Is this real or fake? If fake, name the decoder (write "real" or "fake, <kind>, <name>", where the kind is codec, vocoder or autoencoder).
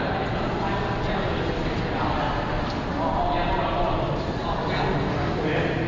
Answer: real